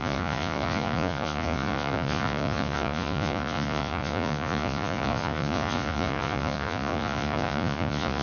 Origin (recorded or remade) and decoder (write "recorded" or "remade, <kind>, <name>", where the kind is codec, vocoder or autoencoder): remade, vocoder, Vocos